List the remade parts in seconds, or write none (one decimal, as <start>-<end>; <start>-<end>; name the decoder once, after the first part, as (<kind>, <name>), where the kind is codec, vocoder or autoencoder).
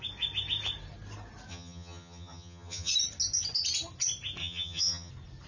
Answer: 1.5-2.9 (vocoder, HiFi-GAN); 4.4-5.1